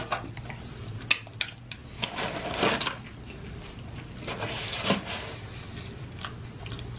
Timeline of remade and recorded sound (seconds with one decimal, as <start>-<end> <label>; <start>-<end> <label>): 0.0-7.0 recorded